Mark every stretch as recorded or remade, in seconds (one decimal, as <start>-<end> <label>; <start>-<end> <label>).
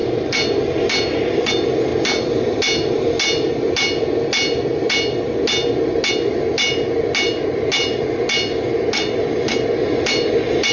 0.0-10.7 recorded